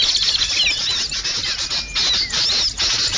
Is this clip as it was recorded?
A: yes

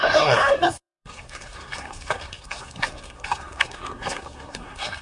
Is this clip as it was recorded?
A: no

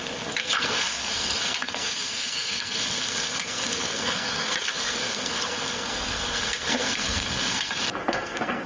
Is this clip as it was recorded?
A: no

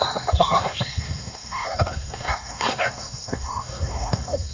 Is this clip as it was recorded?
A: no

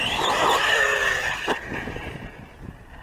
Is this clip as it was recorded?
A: yes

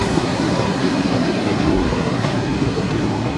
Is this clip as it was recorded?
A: no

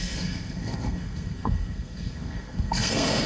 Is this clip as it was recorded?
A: no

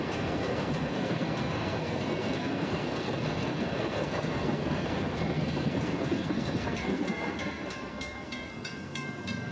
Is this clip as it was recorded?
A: no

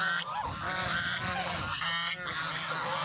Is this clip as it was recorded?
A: yes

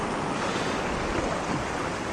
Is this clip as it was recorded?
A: yes